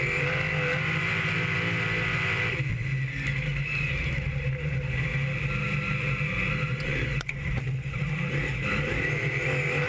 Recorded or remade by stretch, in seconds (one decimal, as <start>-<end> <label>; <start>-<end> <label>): 0.0-6.7 recorded; 6.7-7.6 remade; 7.6-9.9 recorded